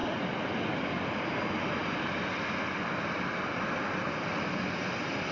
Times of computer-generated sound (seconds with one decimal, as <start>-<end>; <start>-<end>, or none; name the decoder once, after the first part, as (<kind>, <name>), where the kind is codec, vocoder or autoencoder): none